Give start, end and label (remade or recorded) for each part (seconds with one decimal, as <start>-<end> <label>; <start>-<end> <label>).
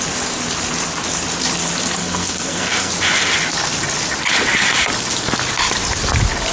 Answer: 0.0-2.0 recorded; 2.0-2.9 remade; 2.9-6.5 recorded